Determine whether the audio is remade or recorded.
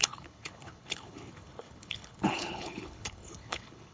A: remade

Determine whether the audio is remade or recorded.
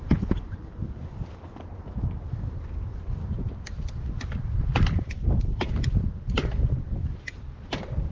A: remade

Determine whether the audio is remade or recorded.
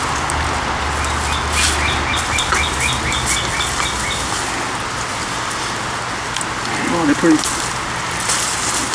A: recorded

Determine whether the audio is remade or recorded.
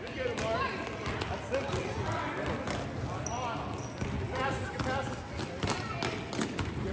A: recorded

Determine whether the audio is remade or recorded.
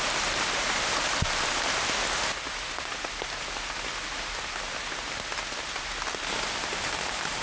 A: recorded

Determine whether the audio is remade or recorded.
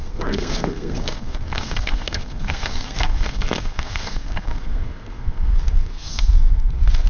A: remade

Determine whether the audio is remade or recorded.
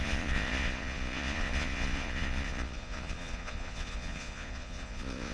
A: remade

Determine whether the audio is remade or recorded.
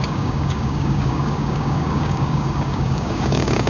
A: remade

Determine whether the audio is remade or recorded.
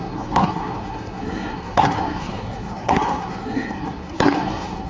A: remade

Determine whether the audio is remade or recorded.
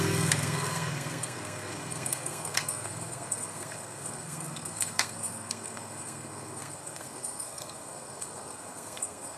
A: remade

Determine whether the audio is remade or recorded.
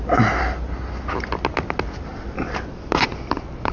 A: recorded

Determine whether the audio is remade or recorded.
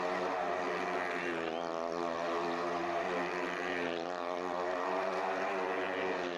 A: recorded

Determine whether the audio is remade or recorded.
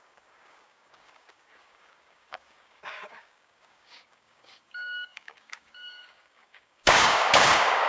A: remade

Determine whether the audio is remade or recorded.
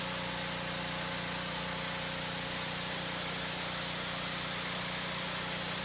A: recorded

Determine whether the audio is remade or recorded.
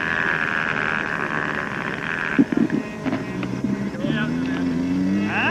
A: recorded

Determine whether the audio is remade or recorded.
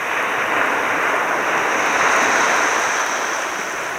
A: recorded